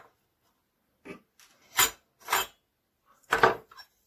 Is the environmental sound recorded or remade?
recorded